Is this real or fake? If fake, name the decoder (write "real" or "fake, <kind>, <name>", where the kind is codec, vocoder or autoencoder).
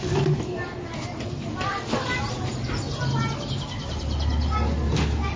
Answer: real